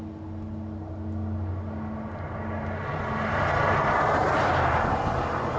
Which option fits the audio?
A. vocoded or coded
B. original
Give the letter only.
B